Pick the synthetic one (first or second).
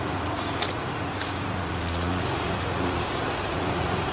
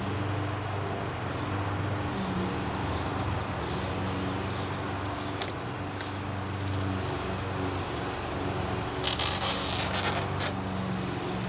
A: first